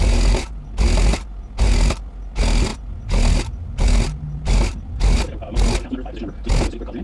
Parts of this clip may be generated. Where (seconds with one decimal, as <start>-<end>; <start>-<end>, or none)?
none